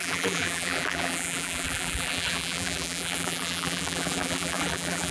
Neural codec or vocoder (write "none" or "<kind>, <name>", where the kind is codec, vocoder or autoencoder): vocoder, BigVGAN v2